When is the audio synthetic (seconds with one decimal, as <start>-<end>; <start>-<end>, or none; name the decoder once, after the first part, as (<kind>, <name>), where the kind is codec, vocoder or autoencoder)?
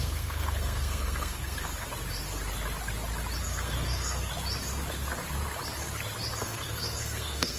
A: 0.0-1.7 (codec, SNAC); 3.4-4.3; 6.4-7.6